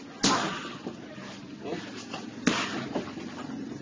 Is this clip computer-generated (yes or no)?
no